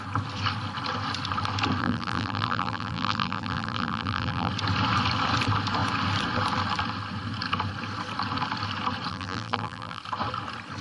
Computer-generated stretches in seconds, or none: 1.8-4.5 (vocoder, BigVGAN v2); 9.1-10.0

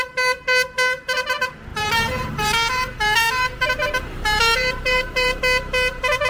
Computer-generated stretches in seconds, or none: 1.7-5.4 (vocoder, BigVGAN v2)